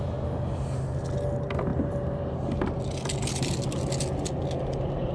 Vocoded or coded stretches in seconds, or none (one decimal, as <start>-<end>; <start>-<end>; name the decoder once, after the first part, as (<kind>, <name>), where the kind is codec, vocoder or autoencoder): none